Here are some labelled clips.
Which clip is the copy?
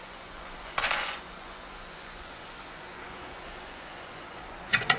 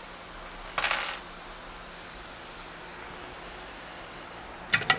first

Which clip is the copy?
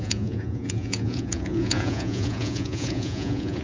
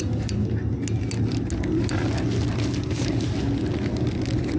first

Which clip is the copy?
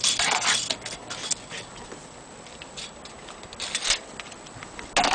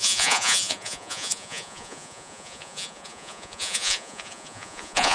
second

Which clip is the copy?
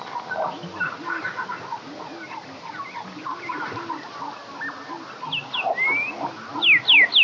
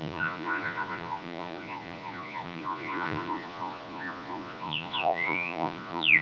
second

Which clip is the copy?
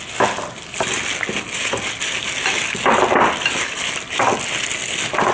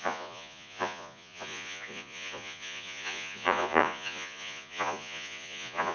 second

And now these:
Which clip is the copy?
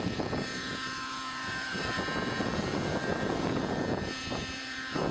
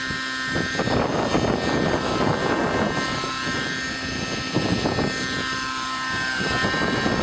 first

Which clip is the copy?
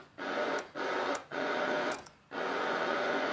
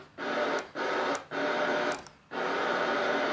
first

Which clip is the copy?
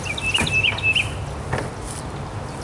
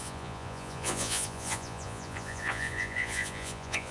second